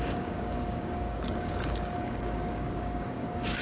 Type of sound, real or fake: fake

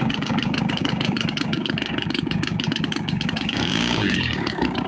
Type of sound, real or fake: fake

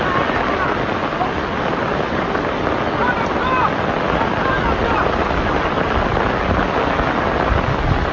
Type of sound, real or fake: real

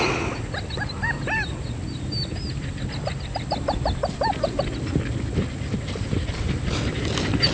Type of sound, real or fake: real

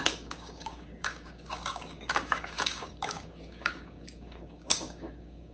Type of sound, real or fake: fake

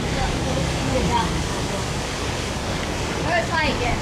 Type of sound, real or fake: fake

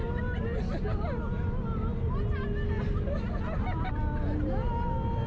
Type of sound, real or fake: real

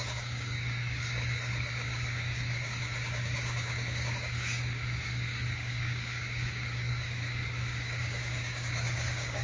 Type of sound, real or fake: fake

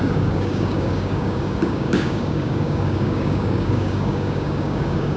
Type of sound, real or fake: fake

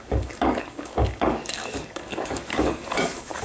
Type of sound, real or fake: fake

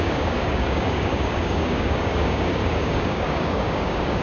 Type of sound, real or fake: fake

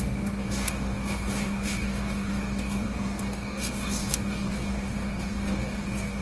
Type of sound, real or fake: fake